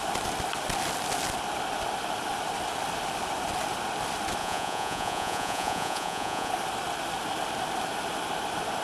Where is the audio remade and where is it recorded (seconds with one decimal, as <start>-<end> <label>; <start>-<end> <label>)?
0.0-4.4 recorded; 4.4-6.5 remade; 6.5-8.8 recorded